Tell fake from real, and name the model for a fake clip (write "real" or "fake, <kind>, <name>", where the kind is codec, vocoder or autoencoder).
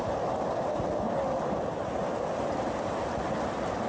real